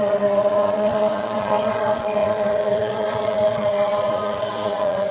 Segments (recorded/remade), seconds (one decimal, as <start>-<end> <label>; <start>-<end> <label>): 0.0-5.1 remade